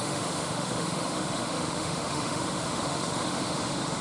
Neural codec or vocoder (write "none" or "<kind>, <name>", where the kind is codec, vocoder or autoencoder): autoencoder, DAC-VAE